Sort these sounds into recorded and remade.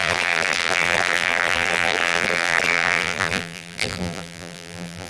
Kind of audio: remade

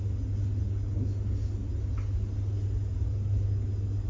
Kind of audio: recorded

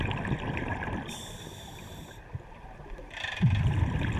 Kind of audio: recorded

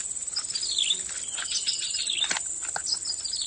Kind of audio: recorded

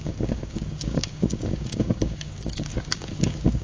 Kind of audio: remade